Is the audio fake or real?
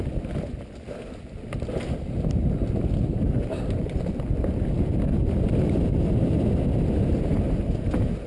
real